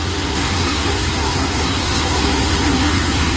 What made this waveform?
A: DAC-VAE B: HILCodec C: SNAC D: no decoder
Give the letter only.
C